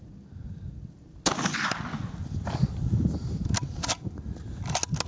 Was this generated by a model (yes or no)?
no